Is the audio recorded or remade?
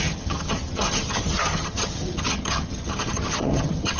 remade